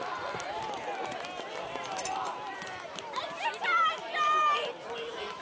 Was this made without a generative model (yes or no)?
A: no